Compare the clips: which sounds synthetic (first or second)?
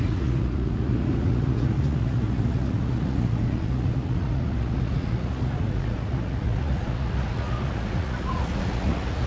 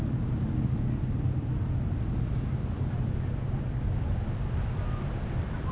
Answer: first